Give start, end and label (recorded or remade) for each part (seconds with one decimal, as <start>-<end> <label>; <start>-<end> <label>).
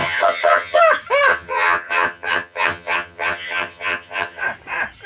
0.0-0.8 remade; 0.8-1.3 recorded; 1.3-4.4 remade; 4.4-5.1 recorded